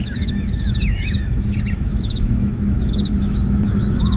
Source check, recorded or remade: remade